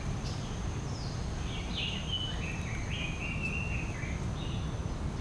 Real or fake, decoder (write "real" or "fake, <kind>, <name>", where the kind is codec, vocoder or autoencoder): real